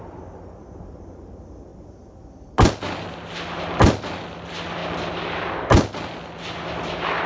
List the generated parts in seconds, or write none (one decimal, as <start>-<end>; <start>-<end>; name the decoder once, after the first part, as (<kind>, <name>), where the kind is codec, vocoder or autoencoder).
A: none